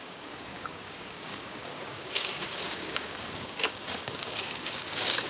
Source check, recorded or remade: remade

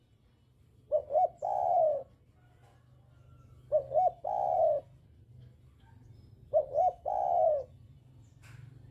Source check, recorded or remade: recorded